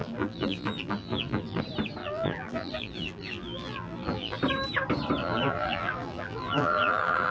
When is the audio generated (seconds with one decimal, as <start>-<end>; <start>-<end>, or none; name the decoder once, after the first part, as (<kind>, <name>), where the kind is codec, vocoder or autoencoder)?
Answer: 0.0-1.6 (vocoder, BigVGAN v2); 2.0-4.4; 5.2-7.3

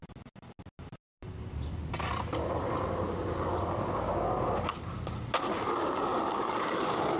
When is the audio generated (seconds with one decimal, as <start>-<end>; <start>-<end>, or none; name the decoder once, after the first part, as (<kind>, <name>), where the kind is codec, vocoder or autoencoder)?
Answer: 6.1-7.2 (vocoder, BigVGAN v2)

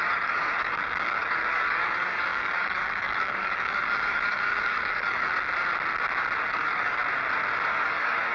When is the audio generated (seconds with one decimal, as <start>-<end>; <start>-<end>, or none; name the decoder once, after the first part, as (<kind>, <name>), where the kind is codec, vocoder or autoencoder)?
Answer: 0.0-5.3 (codec, DAC); 6.5-7.0; 7.7-8.3

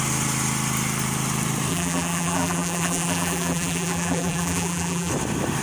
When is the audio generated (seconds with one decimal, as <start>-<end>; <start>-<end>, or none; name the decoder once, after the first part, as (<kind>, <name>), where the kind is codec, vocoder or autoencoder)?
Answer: 1.7-5.1 (vocoder, BigVGAN v2)

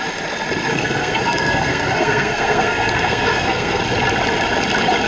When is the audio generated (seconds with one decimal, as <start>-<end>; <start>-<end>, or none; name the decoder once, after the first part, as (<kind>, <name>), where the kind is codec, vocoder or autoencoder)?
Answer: 0.7-3.8 (codec, SNAC)

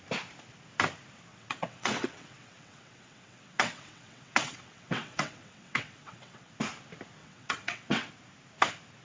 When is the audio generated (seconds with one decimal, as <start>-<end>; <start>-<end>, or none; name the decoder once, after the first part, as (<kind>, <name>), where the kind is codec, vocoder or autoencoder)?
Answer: 1.3-6.5 (vocoder, WaveNeXt); 7.2-8.1